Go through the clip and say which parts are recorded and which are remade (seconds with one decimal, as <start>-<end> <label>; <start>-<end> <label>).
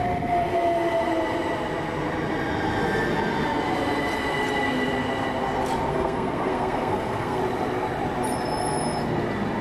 0.0-5.9 recorded; 5.9-7.4 remade; 7.4-9.6 recorded